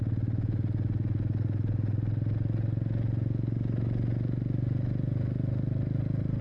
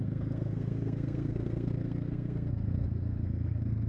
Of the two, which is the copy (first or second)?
second